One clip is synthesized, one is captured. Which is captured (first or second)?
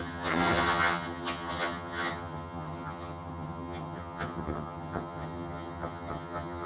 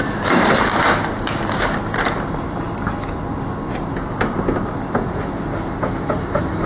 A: second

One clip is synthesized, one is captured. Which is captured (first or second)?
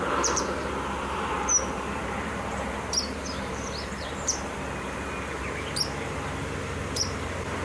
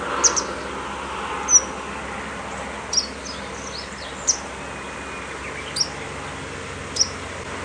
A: second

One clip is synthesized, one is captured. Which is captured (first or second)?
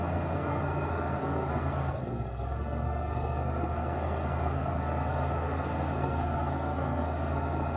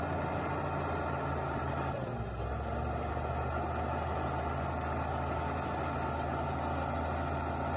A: second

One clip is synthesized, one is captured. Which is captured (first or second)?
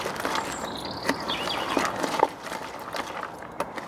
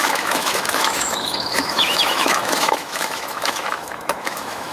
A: first